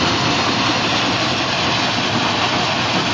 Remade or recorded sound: recorded